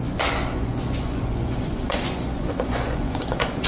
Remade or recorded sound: remade